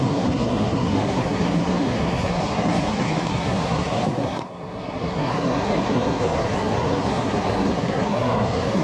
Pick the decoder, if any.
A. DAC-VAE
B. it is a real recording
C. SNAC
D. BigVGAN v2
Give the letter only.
C